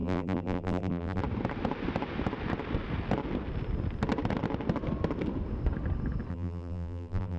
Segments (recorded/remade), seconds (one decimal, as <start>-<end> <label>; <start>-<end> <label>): 0.0-1.2 remade; 1.2-6.3 recorded; 6.3-7.4 remade